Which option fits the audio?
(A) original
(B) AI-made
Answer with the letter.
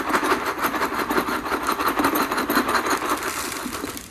B